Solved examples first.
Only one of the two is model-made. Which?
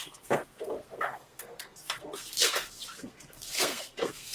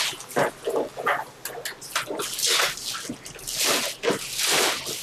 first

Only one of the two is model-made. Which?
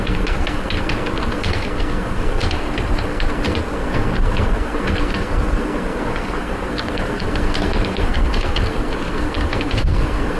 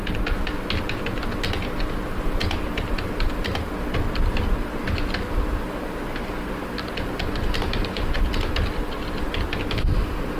first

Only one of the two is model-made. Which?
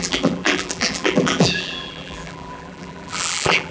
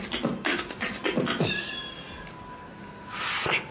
first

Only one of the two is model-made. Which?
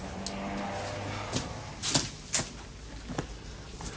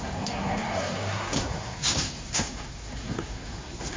second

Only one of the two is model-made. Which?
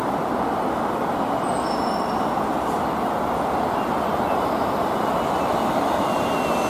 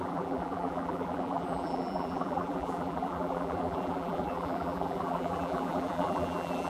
second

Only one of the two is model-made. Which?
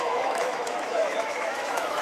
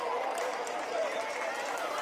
first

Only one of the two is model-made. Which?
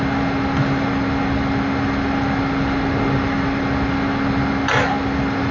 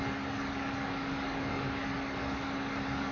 second